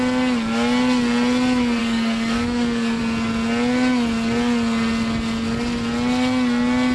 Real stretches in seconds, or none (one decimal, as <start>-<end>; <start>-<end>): 0.0-1.8; 3.0-6.9

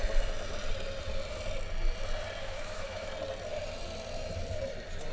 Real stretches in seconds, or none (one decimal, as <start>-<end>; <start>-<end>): 0.0-2.4; 3.1-5.1

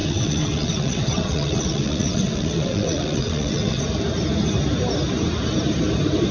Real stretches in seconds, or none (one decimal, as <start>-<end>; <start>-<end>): 3.8-6.3

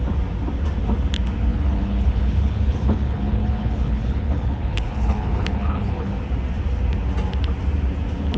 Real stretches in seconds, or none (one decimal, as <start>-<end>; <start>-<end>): 0.0-1.5; 6.2-8.4

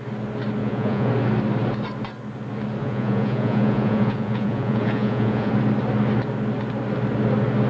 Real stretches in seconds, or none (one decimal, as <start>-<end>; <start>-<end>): 0.0-0.6; 1.1-2.8; 5.5-7.7

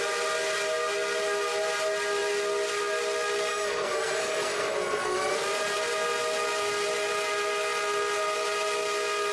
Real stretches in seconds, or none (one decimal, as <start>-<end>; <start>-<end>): 0.0-3.5; 5.4-9.3

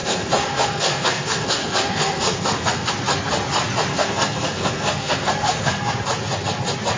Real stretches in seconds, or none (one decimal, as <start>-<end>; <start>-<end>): 2.9-3.9; 5.9-7.0